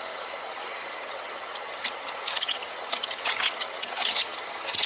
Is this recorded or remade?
remade